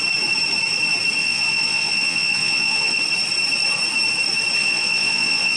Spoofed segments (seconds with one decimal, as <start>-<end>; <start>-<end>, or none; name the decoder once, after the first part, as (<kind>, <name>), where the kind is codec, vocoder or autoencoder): 1.2-3.0 (vocoder, Vocos); 4.6-5.6